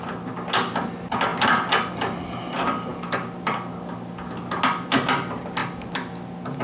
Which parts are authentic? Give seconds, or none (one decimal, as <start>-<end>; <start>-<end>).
0.0-6.6